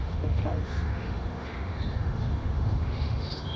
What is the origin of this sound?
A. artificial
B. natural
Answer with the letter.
A